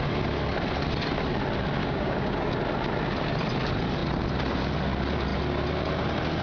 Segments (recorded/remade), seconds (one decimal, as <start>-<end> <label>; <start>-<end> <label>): 0.0-1.8 recorded; 1.8-2.5 remade; 2.5-6.4 recorded